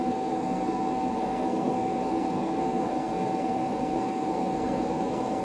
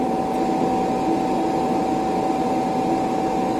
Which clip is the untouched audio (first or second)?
second